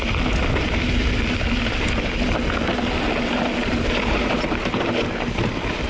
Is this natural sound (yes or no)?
yes